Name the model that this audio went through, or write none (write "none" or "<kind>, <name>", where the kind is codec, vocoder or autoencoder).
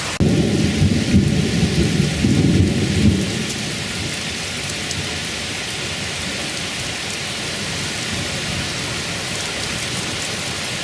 none